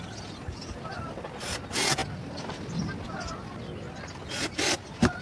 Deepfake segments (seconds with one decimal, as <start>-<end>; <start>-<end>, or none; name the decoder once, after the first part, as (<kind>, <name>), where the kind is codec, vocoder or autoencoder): none